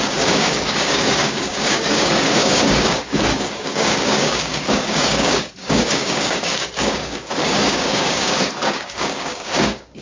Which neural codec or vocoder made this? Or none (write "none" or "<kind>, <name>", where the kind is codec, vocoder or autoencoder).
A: codec, DAC